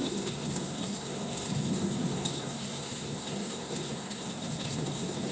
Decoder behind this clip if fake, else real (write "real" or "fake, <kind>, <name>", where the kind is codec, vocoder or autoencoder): fake, codec, SNAC